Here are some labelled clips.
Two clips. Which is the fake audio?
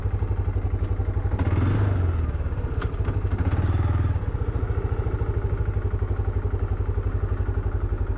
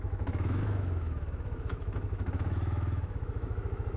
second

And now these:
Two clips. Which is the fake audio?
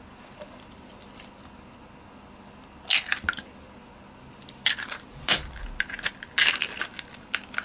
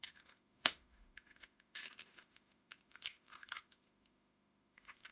second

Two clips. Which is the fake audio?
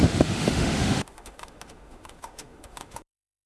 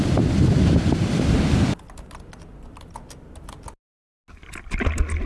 first